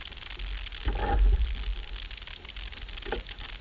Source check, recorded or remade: recorded